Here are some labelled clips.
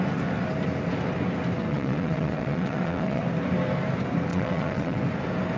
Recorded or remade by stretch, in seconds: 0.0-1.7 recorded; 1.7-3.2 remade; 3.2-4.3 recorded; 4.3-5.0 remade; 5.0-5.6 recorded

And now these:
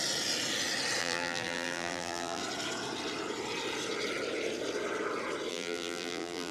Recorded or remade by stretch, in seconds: 0.0-1.0 recorded; 1.0-2.4 remade; 2.4-5.5 recorded; 5.5-6.5 remade